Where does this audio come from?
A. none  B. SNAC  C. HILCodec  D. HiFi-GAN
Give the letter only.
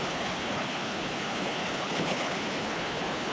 C